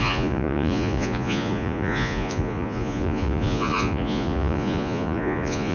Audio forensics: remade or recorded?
remade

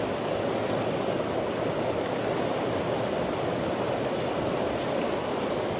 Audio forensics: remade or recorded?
recorded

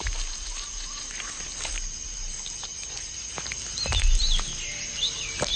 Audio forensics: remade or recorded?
recorded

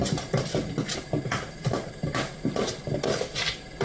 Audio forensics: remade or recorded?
recorded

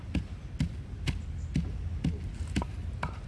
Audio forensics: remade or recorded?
recorded